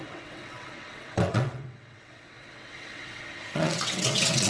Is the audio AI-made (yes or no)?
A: yes